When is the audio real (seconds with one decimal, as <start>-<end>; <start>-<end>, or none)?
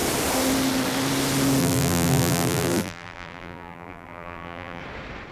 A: 0.0-1.6; 4.8-5.3